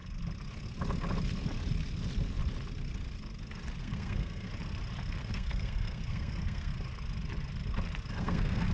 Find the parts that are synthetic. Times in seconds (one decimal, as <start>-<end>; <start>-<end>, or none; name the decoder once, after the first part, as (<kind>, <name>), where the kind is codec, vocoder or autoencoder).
3.8-4.5 (codec, SNAC); 5.2-6.7; 8.1-8.7